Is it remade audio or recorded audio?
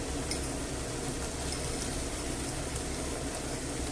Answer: recorded